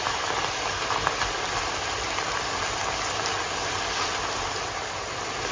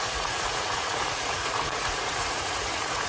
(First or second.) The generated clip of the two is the second